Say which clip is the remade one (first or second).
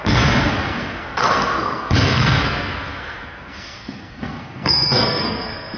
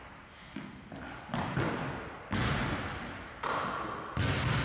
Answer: first